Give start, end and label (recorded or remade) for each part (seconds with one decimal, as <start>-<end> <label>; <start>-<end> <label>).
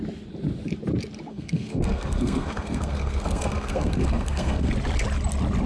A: 0.0-1.3 recorded; 1.3-4.7 remade; 4.7-5.7 recorded